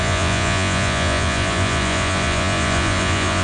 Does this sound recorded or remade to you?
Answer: remade